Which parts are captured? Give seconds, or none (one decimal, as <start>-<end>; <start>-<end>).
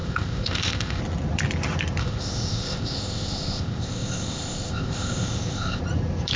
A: 1.0-2.0; 5.8-6.4